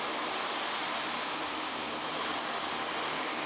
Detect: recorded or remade recorded